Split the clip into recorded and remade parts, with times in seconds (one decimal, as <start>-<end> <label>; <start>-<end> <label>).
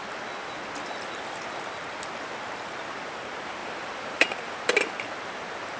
0.0-3.6 recorded; 3.6-4.9 remade; 4.9-5.8 recorded